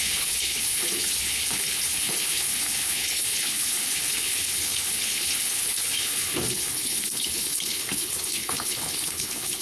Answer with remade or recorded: remade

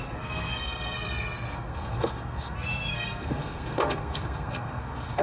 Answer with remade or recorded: remade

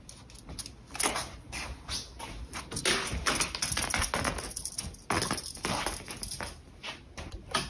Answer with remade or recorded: recorded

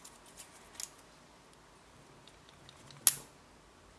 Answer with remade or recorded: recorded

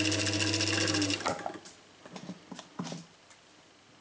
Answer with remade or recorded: recorded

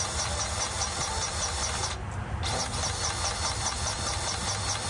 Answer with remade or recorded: recorded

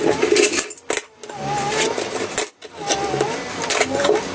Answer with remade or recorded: recorded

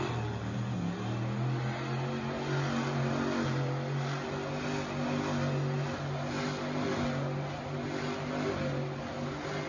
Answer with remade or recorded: recorded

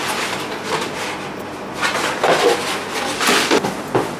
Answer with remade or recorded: recorded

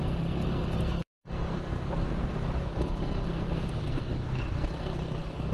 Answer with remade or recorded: remade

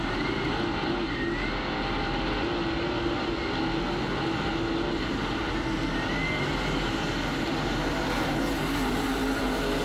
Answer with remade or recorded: recorded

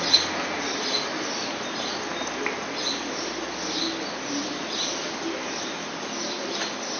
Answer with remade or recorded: recorded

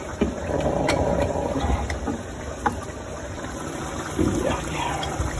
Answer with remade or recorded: remade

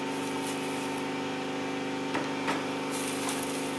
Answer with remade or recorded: recorded